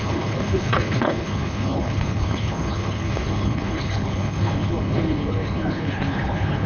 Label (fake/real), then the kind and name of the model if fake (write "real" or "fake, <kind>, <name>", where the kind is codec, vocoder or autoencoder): fake, codec, HILCodec